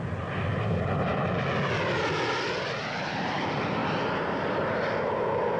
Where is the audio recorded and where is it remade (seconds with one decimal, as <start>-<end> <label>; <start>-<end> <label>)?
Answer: 0.0-5.6 recorded